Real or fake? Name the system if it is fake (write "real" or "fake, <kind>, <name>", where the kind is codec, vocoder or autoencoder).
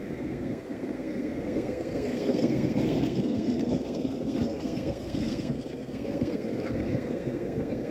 fake, codec, SNAC